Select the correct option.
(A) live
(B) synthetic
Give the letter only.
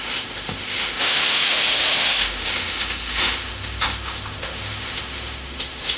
B